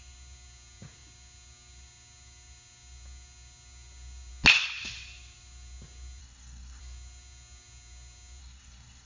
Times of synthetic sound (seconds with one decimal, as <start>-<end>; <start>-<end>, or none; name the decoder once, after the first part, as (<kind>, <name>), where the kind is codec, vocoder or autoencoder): 6.2-6.8 (codec, SNAC); 8.4-9.1